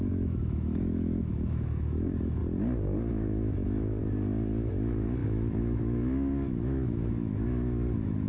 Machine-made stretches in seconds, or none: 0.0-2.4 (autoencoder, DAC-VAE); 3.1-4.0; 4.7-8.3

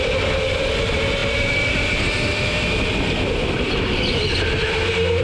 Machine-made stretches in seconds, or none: none

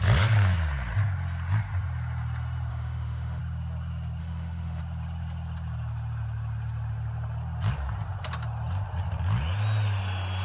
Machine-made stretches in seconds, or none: 2.7-3.4 (autoencoder, DAC-VAE); 4.2-4.8